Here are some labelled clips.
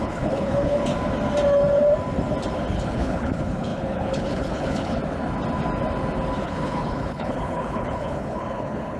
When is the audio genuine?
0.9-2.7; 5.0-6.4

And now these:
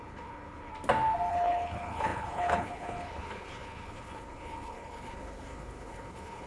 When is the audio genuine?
0.7-1.3

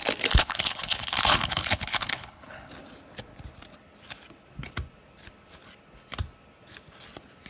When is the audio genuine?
0.0-0.4; 2.7-7.5

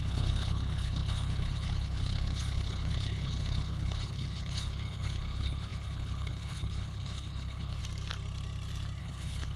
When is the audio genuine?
7.8-9.0

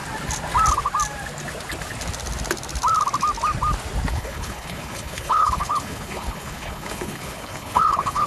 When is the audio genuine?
0.0-4.1